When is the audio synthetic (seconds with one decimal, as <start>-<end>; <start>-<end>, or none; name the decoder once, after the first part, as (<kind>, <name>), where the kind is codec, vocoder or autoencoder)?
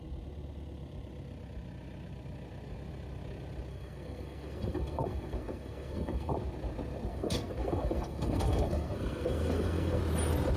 3.7-6.3 (codec, SNAC); 7.1-10.0